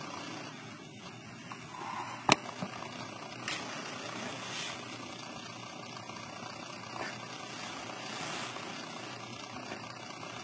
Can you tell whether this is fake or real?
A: real